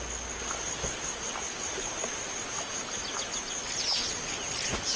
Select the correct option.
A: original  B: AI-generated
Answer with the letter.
A